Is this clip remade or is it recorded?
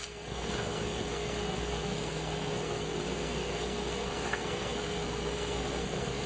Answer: remade